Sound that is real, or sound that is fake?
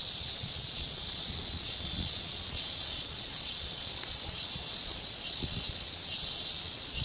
fake